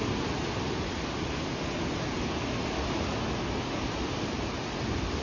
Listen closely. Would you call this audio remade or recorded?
recorded